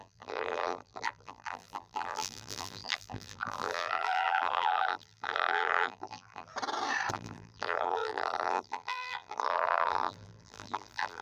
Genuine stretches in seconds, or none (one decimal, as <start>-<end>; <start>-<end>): 6.5-7.1